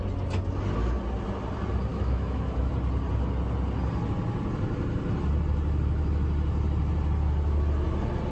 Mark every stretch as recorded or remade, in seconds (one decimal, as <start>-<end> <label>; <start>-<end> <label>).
0.0-1.9 recorded; 1.9-2.7 remade; 2.7-8.3 recorded